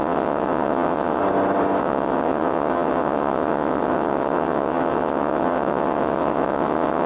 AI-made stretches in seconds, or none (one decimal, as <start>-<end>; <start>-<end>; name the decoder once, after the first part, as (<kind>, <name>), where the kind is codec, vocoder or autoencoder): 0.0-1.2 (vocoder, WaveNeXt); 1.8-7.1